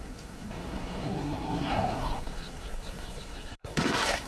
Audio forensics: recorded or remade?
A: remade